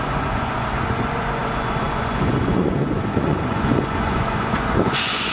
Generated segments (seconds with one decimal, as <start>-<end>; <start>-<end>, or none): 0.0-5.3